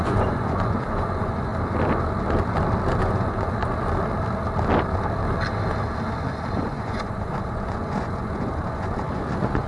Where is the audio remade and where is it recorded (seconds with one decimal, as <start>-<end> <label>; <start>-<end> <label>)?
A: 0.0-1.5 remade; 1.5-3.0 recorded; 3.0-3.6 remade; 3.6-6.6 recorded; 6.6-9.7 remade